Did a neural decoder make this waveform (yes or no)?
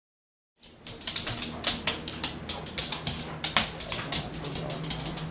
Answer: no